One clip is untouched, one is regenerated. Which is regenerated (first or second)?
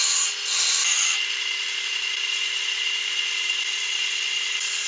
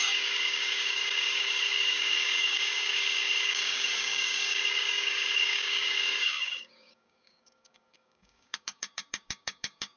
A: second